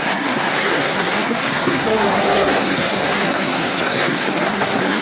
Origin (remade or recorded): remade